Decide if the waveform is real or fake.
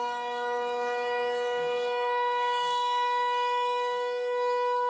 fake